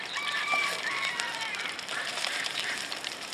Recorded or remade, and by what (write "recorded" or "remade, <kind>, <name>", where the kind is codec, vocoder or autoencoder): remade, vocoder, BigVGAN v2